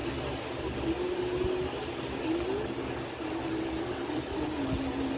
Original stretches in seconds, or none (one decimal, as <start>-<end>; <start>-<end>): 0.0-5.2